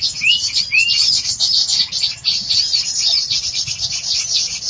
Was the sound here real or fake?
real